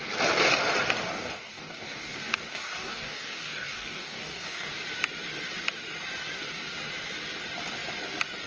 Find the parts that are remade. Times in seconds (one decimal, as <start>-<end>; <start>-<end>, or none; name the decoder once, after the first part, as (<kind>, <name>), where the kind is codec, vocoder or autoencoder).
1.1-4.7 (codec, DAC)

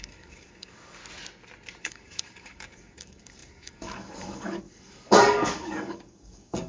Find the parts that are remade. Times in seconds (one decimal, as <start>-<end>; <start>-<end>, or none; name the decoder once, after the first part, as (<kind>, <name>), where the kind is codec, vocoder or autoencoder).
0.0-1.0 (codec, DAC); 1.8-6.7

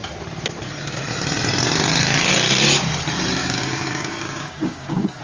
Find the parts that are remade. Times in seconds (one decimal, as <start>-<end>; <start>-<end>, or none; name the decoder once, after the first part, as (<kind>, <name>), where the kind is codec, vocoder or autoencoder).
3.4-5.2 (codec, DAC)

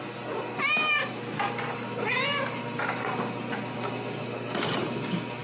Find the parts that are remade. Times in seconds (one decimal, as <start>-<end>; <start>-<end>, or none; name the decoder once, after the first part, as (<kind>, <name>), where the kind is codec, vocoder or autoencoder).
none

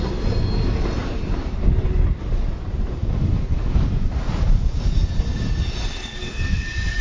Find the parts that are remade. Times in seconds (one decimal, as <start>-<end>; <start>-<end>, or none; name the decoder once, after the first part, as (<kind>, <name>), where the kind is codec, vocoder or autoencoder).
3.0-3.9 (codec, DAC)

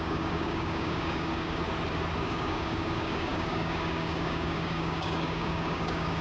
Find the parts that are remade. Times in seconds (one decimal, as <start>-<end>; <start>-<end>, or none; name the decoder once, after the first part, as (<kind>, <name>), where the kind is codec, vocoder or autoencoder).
0.0-1.6 (codec, DAC); 2.2-6.2

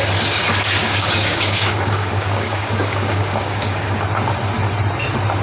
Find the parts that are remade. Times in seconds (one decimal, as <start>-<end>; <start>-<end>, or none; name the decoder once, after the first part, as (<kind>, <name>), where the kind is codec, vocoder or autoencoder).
0.8-4.0 (codec, DAC)

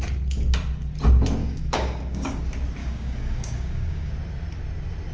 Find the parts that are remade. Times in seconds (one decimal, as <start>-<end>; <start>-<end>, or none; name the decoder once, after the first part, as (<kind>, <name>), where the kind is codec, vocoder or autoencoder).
1.4-2.4 (codec, DAC); 2.8-4.1